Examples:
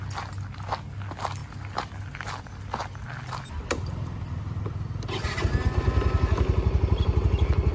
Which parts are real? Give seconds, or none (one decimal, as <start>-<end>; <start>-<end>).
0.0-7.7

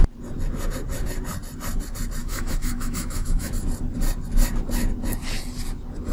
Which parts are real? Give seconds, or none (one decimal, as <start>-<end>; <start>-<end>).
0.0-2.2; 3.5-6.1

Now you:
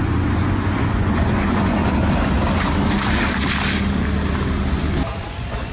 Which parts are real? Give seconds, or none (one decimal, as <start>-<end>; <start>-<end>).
1.8-5.2

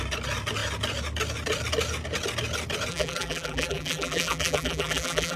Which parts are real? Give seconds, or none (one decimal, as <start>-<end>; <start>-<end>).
0.0-2.9

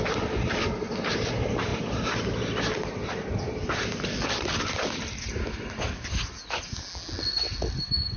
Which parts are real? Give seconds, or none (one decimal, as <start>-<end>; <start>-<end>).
0.0-8.2